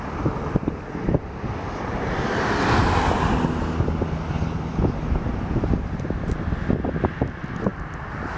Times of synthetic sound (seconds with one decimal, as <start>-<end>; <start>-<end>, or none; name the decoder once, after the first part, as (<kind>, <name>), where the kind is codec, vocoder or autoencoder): none